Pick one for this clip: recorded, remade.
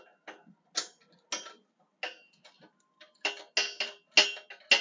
recorded